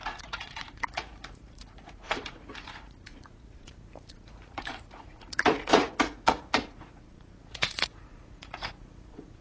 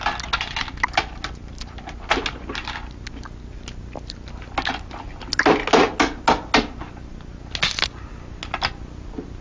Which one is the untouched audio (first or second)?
second